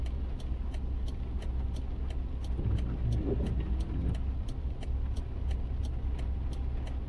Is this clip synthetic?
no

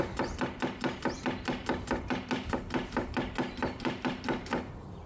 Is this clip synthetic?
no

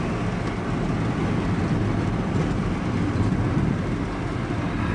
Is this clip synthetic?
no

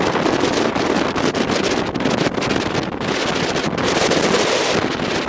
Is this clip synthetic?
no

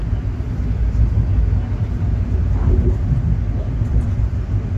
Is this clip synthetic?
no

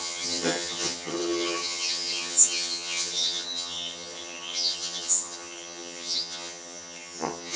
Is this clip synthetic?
yes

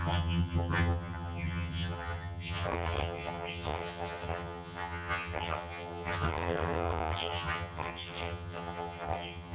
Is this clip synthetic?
yes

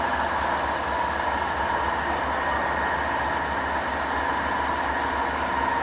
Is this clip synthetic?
no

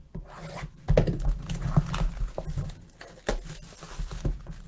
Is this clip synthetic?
no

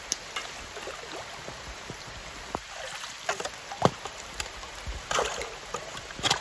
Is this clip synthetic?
no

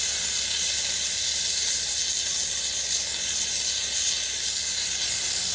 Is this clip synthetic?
no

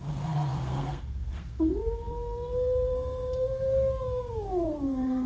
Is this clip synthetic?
yes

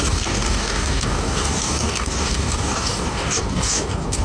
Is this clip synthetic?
yes